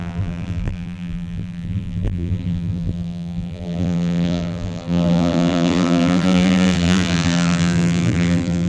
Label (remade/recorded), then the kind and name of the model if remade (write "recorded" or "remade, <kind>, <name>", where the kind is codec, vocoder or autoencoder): remade, vocoder, BigVGAN v2